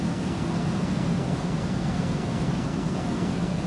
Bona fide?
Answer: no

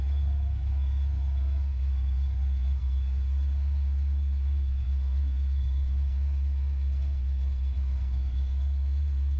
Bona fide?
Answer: no